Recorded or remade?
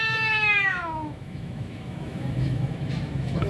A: remade